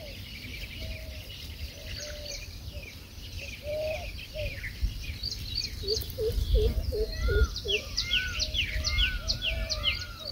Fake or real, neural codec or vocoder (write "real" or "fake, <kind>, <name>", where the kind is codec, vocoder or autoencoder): fake, vocoder, BigVGAN v2